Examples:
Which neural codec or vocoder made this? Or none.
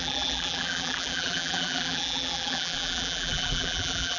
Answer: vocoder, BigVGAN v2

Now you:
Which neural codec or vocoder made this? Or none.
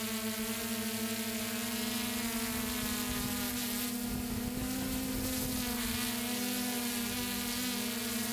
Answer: none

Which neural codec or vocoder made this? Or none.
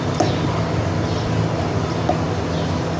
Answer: none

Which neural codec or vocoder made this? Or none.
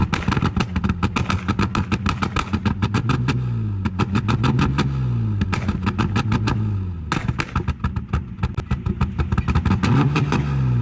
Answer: none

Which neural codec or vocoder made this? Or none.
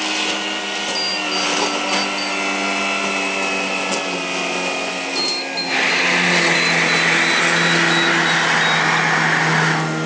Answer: none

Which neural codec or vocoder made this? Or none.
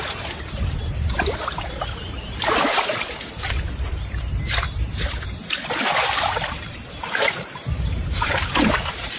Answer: vocoder, BigVGAN v2